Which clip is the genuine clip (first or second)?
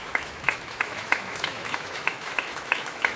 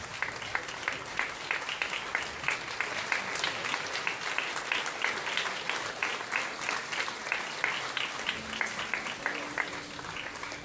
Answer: second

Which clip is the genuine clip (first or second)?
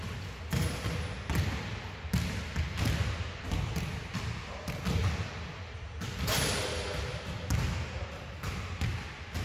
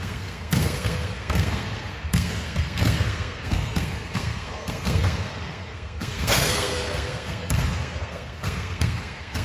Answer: first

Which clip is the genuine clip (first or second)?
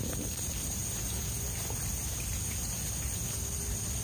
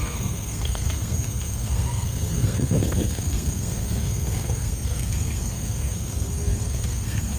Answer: first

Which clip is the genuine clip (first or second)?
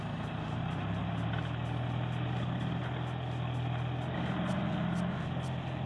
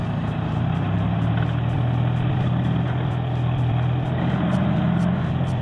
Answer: first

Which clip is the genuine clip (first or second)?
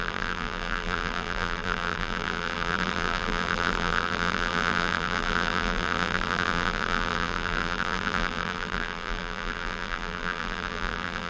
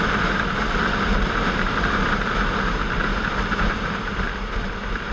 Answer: second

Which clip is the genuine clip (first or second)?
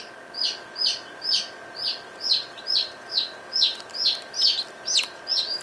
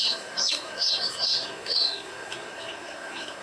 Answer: first